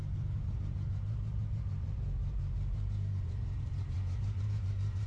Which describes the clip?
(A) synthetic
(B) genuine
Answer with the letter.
A